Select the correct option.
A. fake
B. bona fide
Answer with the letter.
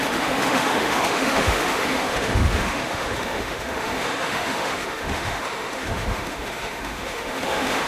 A